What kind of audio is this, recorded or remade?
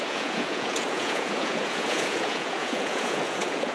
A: remade